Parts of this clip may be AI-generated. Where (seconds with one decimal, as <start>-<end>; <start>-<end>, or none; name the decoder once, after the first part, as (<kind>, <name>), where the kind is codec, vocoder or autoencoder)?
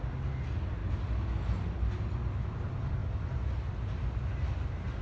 none